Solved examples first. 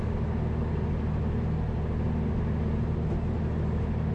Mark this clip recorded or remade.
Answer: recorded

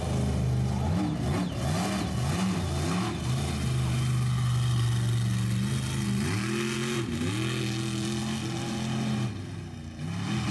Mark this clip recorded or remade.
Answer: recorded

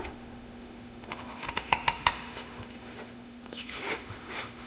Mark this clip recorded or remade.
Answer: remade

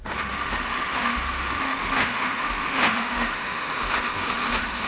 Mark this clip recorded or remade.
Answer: remade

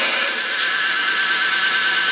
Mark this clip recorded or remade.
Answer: recorded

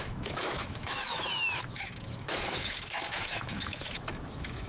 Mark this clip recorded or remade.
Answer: remade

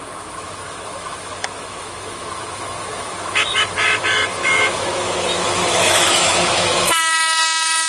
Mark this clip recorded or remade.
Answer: remade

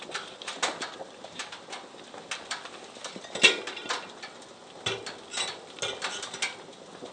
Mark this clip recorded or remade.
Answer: recorded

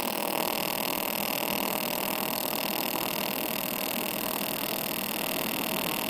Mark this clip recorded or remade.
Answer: recorded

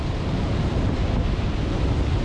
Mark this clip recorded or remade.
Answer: recorded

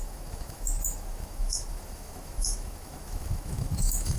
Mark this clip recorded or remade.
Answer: remade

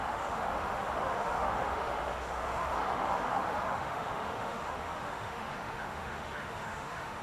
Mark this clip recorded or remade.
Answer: remade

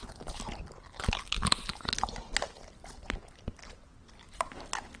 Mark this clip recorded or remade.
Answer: recorded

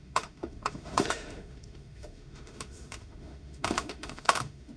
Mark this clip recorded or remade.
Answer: remade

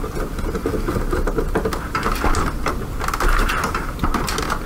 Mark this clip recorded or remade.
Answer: recorded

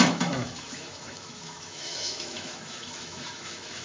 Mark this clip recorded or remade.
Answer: remade